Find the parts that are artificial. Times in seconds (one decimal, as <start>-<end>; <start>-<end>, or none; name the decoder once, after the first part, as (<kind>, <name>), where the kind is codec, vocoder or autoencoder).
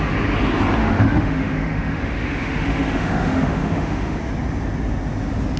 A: 0.8-4.2 (autoencoder, DAC-VAE)